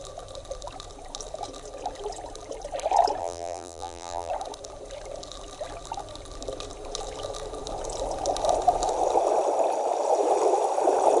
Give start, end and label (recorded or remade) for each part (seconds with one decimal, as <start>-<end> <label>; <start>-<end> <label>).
0.0-3.2 recorded; 3.2-4.3 remade; 4.3-11.2 recorded